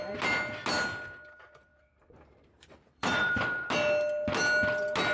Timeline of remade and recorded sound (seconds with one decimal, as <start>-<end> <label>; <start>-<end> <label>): 0.0-1.7 recorded; 1.7-3.7 remade; 3.7-5.1 recorded